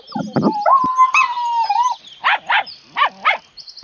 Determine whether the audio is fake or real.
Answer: real